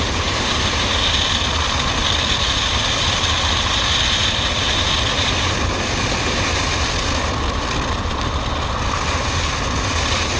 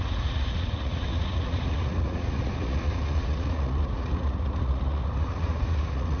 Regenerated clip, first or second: second